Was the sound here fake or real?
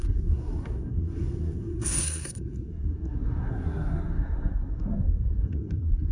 fake